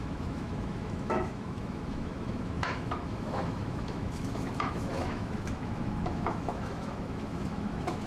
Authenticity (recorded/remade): remade